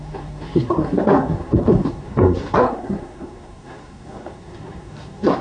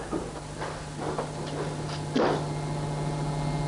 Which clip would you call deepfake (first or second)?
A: first